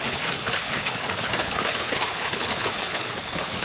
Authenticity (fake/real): fake